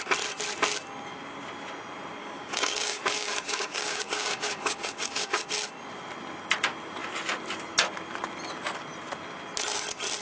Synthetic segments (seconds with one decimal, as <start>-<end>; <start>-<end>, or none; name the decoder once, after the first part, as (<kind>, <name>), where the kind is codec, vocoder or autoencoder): 2.2-5.4 (codec, DAC)